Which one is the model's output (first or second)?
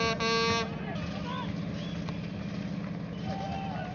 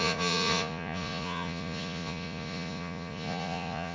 second